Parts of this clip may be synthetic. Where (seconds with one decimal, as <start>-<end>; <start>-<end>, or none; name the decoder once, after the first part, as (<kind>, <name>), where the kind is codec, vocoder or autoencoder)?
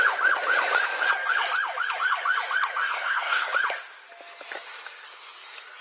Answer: 2.8-3.5 (codec, SNAC)